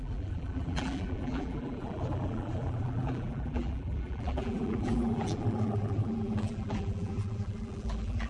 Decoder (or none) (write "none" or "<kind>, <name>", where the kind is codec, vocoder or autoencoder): vocoder, BigVGAN v2